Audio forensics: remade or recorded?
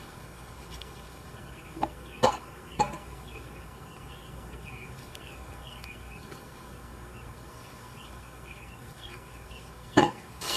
remade